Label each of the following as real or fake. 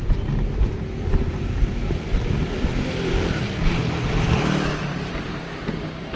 real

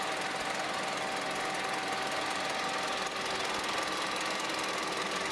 real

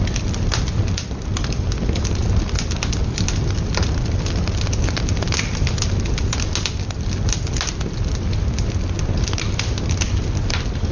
real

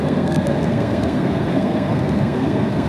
fake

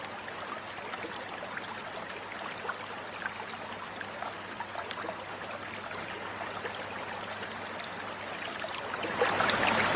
real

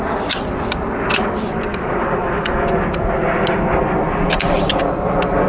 real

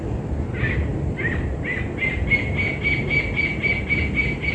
real